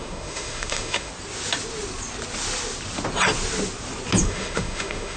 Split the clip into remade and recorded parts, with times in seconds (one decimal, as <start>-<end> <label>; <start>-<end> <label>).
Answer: 0.0-1.1 remade; 1.1-4.2 recorded; 4.2-5.2 remade